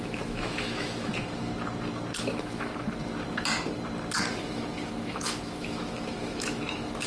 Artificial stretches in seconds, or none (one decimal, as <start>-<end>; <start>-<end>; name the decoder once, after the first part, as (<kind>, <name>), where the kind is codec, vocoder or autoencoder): 0.0-1.5 (autoencoder, DAC-VAE); 2.2-2.7; 4.4-7.1